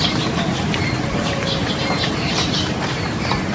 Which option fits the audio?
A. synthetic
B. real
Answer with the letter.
A